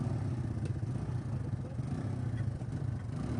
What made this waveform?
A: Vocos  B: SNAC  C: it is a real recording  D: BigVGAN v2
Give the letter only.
C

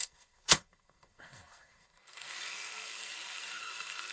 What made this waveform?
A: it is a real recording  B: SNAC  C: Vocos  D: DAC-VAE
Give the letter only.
B